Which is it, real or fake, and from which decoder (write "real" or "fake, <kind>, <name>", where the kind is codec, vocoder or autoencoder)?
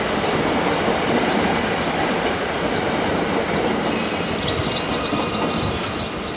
real